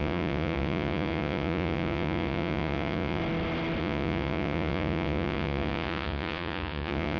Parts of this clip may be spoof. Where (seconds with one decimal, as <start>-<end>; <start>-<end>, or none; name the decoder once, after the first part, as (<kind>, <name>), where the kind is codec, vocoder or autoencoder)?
0.0-3.2 (vocoder, Vocos); 3.8-7.2

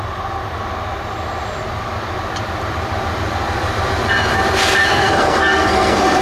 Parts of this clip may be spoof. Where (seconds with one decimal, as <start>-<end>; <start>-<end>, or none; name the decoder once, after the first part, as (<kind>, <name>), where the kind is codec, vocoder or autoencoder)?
4.8-6.2 (codec, SNAC)

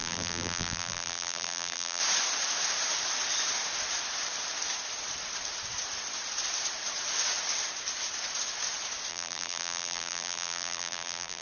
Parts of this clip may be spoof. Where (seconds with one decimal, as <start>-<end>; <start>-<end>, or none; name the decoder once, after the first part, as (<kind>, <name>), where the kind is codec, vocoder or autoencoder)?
0.0-2.0 (vocoder, BigVGAN v2); 9.1-11.4

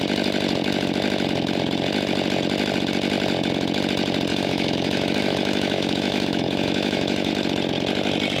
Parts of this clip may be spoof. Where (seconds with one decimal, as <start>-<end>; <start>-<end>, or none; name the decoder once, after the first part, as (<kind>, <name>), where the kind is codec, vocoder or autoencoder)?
4.3-7.3 (autoencoder, DAC-VAE)

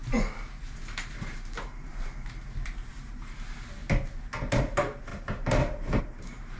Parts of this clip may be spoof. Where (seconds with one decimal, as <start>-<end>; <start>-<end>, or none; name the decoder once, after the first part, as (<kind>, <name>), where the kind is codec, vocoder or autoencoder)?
0.6-1.9 (vocoder, BigVGAN v2); 2.9-3.8; 4.6-6.6

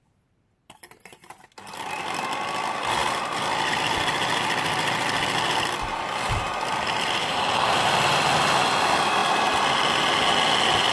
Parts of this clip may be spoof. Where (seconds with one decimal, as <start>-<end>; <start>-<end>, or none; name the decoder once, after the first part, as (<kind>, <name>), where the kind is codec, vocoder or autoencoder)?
7.2-7.9 (vocoder, BigVGAN v2)

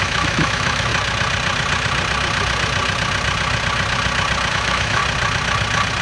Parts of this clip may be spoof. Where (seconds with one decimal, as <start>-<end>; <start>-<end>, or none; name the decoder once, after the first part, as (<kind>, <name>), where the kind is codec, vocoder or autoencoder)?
0.0-0.9 (autoencoder, DAC-VAE); 4.5-5.0